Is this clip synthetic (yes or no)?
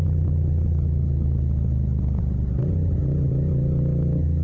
no